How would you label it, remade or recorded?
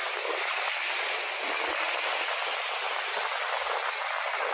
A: recorded